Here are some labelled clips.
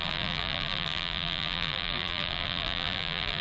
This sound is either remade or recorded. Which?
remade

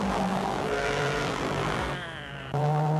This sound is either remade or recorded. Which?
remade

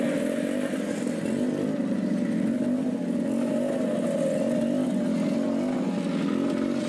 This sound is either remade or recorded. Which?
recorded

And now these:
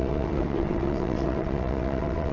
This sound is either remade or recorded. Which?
remade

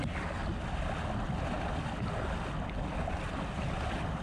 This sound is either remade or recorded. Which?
recorded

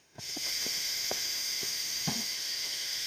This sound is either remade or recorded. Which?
remade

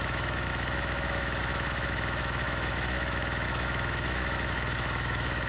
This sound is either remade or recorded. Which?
remade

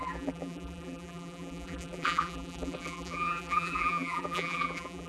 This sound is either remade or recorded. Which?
remade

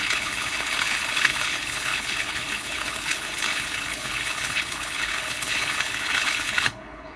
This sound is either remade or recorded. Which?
remade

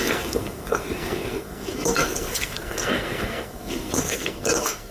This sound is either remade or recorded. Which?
remade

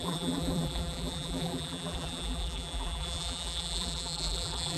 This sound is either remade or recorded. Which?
remade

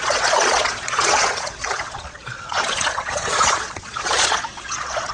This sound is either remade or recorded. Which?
remade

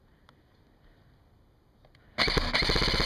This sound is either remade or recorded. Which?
recorded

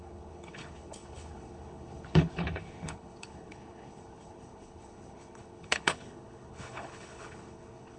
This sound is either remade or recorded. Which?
remade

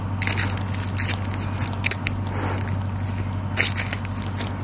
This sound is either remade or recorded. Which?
recorded